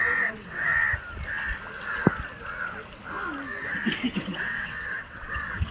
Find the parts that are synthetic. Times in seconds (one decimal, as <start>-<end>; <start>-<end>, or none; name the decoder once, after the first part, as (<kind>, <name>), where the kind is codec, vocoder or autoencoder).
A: 0.0-0.7 (vocoder, WaveNeXt); 4.1-5.7